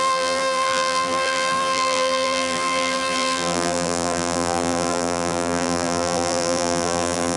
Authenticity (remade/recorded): remade